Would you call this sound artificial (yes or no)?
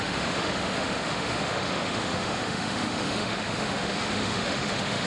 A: yes